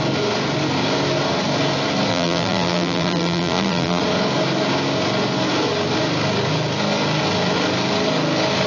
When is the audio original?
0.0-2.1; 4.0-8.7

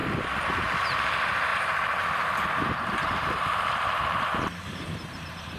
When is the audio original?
0.0-0.5

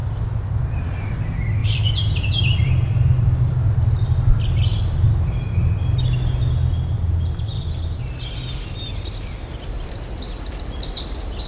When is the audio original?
0.0-1.6; 3.5-11.5

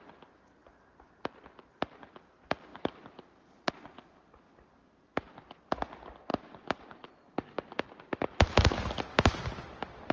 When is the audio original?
0.0-2.7; 3.7-6.3; 7.1-10.1

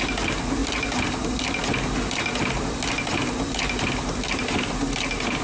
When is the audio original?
0.0-5.4

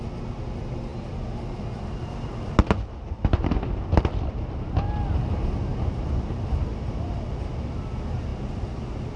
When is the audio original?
0.0-9.2

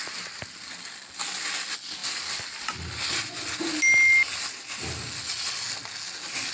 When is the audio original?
0.0-6.5

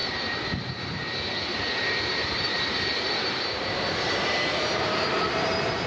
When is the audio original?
0.6-1.5; 5.0-5.9